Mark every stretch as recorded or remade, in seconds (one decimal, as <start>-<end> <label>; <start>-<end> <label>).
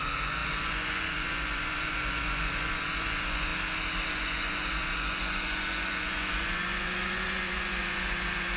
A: 0.0-3.5 remade; 3.5-4.1 recorded; 4.1-8.6 remade